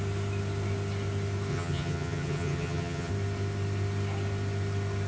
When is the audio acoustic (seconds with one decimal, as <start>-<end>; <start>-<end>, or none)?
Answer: 0.0-1.5; 3.1-5.1